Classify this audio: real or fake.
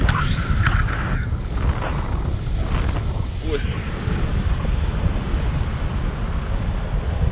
real